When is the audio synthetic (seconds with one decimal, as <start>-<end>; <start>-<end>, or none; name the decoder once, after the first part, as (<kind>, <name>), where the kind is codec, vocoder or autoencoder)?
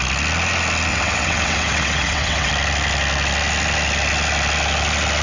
0.9-2.5 (vocoder, WaveNeXt)